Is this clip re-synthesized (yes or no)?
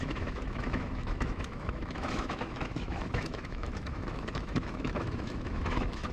yes